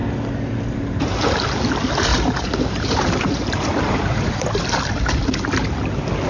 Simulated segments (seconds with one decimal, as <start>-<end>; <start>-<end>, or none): 2.1-4.4